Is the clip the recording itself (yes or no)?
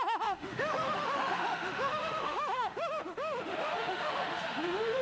no